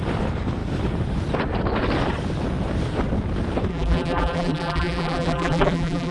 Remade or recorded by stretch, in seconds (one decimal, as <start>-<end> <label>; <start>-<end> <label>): 0.0-3.7 recorded; 3.7-6.1 remade